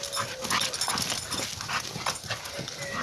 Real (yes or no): yes